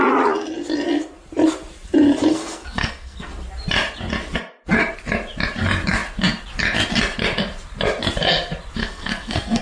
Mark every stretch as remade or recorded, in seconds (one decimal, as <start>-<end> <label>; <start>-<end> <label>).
0.0-2.3 recorded; 2.3-3.3 remade; 3.3-8.8 recorded; 8.8-9.6 remade